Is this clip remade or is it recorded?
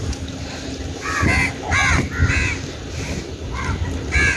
recorded